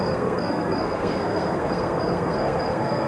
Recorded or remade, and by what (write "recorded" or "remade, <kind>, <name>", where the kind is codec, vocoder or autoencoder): remade, codec, SNAC